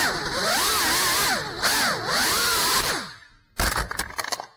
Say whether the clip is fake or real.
real